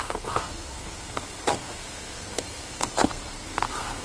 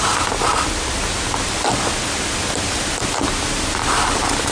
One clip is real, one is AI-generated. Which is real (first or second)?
second